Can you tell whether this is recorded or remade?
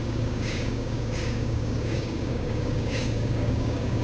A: remade